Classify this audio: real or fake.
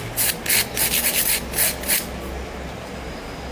real